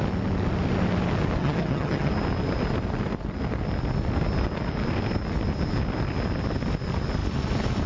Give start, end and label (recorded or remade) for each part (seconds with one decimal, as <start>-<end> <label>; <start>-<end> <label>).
0.0-1.4 recorded; 1.4-2.1 remade; 2.1-7.9 recorded